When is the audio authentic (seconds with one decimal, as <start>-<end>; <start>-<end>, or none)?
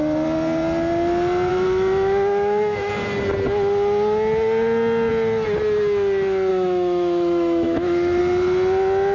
0.0-1.5; 2.9-6.5; 8.2-9.1